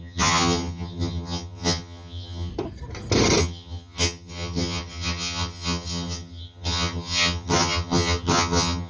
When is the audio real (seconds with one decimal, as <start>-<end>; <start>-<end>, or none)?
2.5-3.4